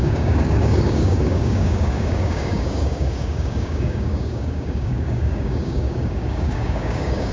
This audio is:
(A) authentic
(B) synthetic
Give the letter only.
B